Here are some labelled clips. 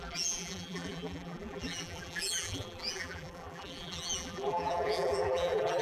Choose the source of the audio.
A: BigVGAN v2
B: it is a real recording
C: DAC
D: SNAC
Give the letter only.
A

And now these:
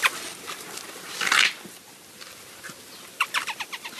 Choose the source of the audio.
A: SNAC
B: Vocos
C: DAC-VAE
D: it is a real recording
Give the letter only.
D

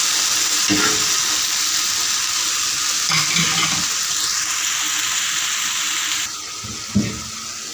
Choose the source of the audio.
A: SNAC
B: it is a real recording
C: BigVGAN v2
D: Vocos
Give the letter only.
B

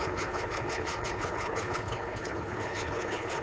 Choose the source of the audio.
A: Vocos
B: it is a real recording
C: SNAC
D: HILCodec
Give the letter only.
D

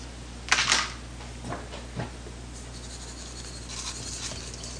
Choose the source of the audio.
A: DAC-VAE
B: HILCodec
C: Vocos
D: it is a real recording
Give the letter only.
D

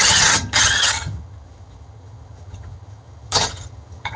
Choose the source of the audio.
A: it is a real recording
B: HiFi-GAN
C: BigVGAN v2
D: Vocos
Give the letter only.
B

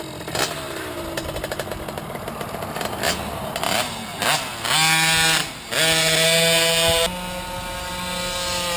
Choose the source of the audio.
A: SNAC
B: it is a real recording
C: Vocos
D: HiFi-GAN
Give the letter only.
B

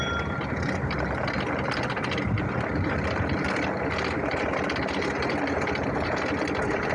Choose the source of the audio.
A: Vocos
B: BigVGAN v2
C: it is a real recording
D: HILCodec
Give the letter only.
C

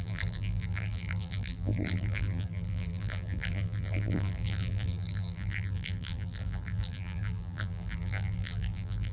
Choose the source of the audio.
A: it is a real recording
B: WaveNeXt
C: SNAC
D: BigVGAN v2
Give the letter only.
D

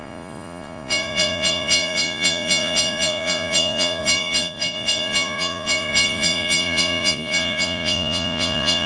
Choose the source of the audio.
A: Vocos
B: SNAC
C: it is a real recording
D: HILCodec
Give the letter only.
A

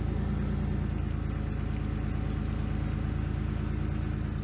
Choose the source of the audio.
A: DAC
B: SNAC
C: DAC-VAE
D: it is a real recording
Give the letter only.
D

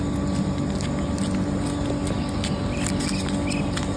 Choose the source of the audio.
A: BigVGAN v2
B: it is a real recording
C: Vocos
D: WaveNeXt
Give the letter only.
B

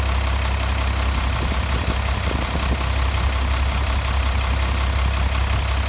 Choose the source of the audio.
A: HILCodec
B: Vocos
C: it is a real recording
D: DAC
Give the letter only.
C